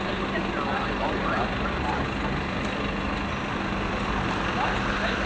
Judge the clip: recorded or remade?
recorded